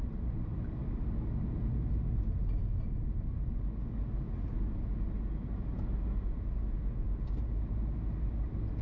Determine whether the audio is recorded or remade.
recorded